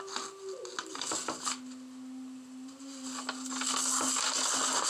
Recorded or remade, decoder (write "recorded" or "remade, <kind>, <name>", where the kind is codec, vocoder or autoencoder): recorded